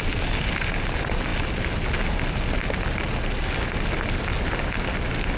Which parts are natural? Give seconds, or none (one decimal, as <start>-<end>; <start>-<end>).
0.0-5.4